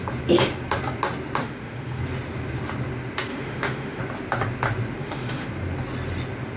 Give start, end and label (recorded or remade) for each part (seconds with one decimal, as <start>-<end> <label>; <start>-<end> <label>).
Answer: 0.0-1.4 recorded; 1.4-2.0 remade; 2.0-3.3 recorded; 3.3-4.0 remade; 4.0-5.0 recorded; 5.0-5.5 remade; 5.5-6.6 recorded